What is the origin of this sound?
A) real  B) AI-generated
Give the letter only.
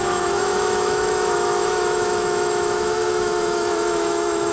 B